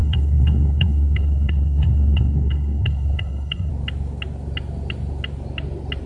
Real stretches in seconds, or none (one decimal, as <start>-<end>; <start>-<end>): 3.7-6.1